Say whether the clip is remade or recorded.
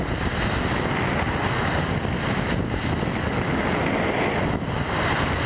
recorded